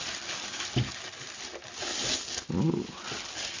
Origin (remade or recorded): recorded